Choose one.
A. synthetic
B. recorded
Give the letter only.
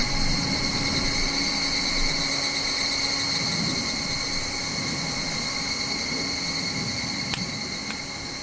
B